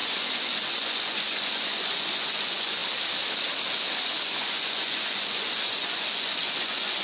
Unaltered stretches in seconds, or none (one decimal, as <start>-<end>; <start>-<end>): 2.8-3.7